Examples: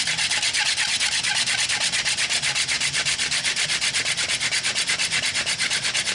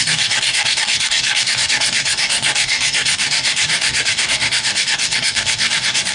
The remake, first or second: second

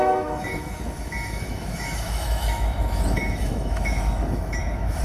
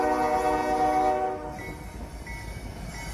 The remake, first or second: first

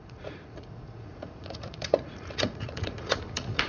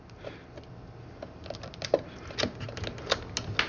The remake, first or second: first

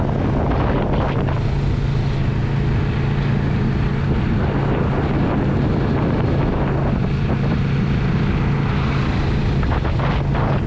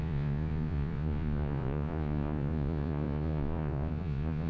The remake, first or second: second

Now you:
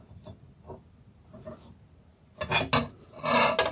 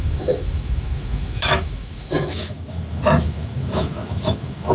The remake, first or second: second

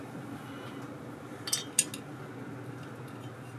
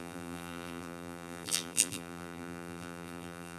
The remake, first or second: second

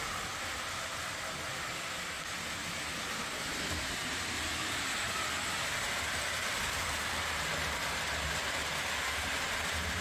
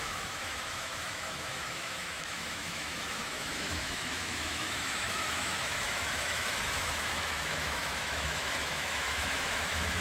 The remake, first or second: second